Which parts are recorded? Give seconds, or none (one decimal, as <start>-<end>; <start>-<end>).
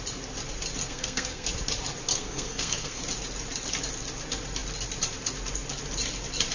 0.0-0.8; 1.5-2.1; 3.0-6.5